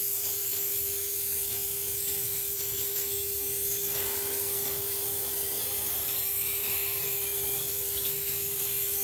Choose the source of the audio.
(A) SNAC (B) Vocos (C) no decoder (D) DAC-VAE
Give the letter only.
A